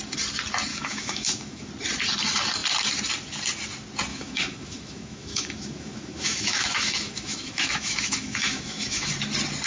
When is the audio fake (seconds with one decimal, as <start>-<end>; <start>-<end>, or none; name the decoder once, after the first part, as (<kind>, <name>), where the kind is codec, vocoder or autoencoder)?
0.7-1.7 (autoencoder, DAC-VAE); 4.1-9.1